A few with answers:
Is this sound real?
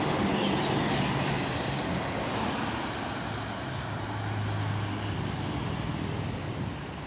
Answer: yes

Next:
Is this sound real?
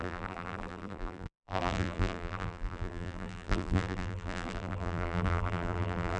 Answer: no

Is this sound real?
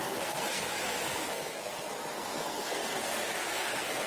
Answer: no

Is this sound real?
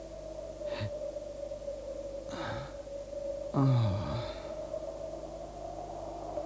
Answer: yes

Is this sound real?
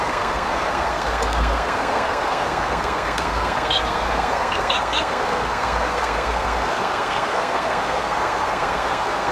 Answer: no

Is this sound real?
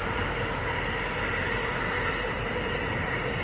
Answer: yes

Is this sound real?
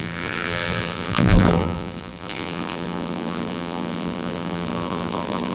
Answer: no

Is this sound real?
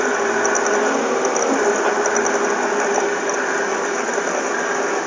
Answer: yes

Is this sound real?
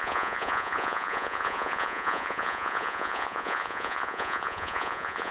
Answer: no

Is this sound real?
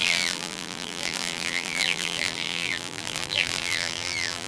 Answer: no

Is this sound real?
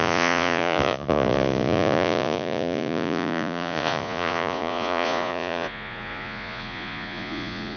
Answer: no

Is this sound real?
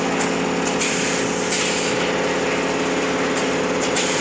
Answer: yes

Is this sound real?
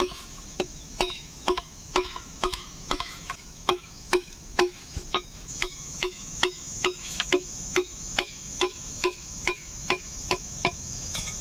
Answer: no